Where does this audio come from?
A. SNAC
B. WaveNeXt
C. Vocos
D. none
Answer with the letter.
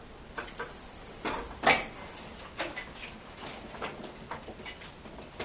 D